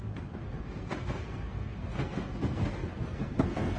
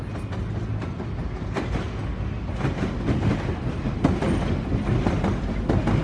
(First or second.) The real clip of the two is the second